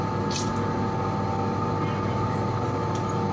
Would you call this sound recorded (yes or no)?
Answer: yes